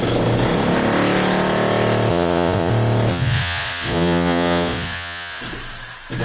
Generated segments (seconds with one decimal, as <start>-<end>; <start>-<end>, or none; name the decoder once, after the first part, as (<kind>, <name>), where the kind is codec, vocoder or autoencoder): 2.1-2.7 (vocoder, Vocos); 3.1-5.4